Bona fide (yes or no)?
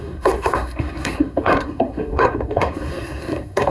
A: no